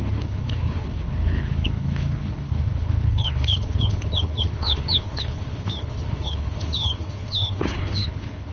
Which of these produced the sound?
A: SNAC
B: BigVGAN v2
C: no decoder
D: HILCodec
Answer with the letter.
D